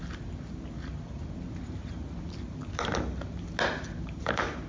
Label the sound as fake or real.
real